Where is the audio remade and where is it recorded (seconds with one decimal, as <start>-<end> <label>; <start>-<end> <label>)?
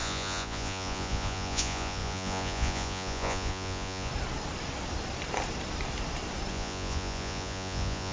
0.0-4.1 remade; 4.1-6.5 recorded; 6.5-8.1 remade